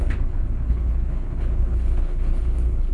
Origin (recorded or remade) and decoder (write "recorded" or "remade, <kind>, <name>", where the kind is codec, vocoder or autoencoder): remade, codec, HILCodec